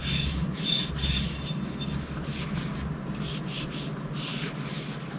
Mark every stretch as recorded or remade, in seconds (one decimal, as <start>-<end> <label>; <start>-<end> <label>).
0.0-5.2 recorded